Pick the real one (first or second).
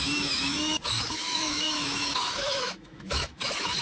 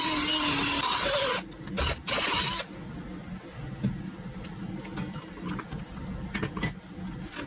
second